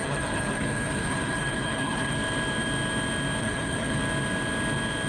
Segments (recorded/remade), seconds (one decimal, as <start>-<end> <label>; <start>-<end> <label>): 0.0-2.2 remade; 2.2-3.4 recorded; 3.4-4.0 remade; 4.0-5.1 recorded